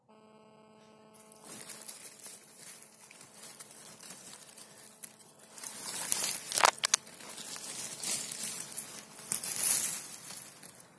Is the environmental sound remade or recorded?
recorded